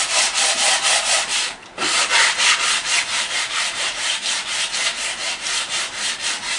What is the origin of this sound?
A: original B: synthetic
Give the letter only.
B